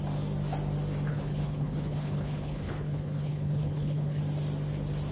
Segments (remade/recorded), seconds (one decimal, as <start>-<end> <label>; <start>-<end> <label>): 0.0-1.1 recorded; 1.1-4.2 remade; 4.2-5.1 recorded